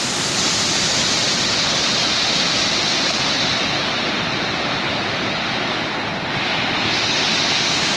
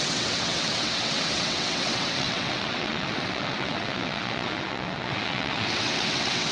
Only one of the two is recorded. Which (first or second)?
first